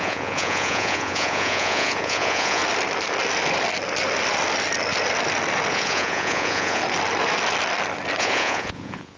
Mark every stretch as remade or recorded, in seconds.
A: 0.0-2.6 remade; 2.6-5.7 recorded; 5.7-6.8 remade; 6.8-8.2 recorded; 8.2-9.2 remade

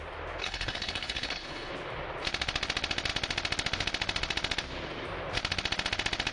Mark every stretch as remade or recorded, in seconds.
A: 0.0-0.4 recorded; 0.4-1.7 remade; 1.7-6.3 recorded

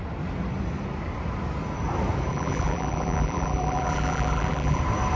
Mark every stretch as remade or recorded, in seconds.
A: 0.0-2.3 recorded; 2.3-4.8 remade; 4.8-5.2 recorded

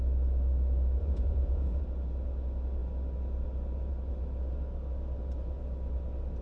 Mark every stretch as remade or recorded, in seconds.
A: 0.0-1.0 recorded; 1.0-1.8 remade; 1.8-6.4 recorded

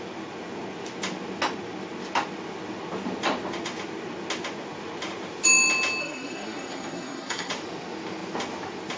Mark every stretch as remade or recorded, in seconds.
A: 0.0-6.0 recorded; 6.0-7.5 remade; 7.5-9.0 recorded

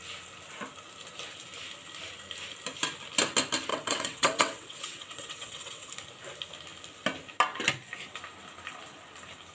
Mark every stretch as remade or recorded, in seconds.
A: 0.0-3.7 recorded; 3.7-5.9 remade; 5.9-9.5 recorded

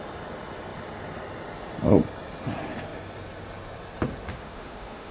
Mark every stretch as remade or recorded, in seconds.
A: 0.0-4.3 recorded; 4.3-5.1 remade